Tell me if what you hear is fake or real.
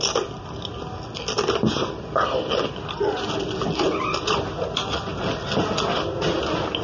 real